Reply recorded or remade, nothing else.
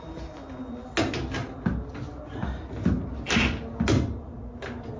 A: recorded